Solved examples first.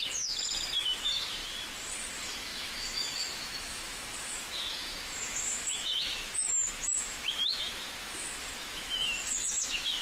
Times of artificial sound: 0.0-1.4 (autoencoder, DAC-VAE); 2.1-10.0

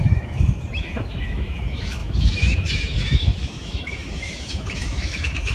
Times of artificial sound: 0.0-5.5 (autoencoder, DAC-VAE)

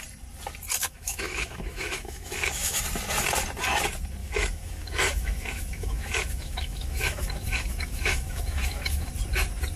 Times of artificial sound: 0.8-2.8 (autoencoder, DAC-VAE); 4.2-9.1

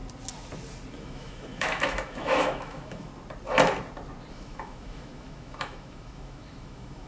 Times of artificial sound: 1.0-3.1 (autoencoder, DAC-VAE); 4.3-7.1

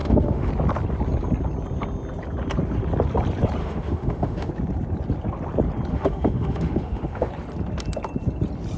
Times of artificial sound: 0.0-0.5 (autoencoder, DAC-VAE); 3.6-4.5; 5.9-7.3